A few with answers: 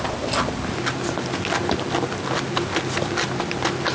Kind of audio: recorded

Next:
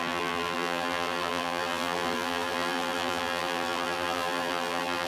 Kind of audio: remade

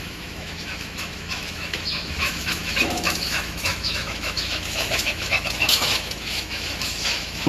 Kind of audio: remade